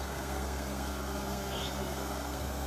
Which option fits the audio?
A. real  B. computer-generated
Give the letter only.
B